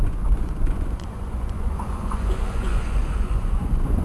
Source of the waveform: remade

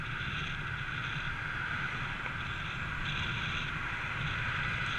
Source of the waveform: recorded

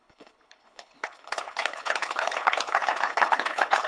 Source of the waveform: remade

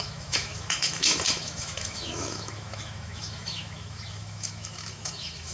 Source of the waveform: remade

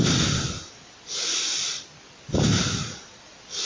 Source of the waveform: recorded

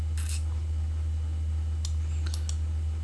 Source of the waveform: recorded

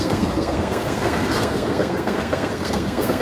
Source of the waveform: remade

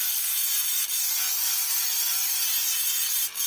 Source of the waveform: recorded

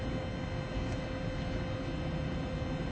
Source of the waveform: recorded